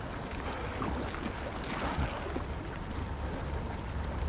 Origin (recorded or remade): recorded